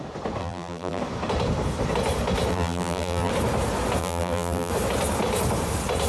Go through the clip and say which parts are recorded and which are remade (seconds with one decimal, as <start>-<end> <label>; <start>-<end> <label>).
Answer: 0.0-0.4 recorded; 0.4-1.0 remade; 1.0-2.5 recorded; 2.5-3.3 remade; 3.3-4.0 recorded; 4.0-4.7 remade; 4.7-6.1 recorded